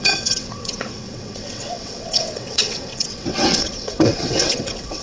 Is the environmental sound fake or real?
fake